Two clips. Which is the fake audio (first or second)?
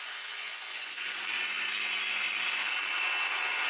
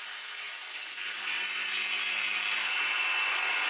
first